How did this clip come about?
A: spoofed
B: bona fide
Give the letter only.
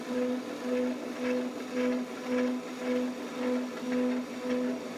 B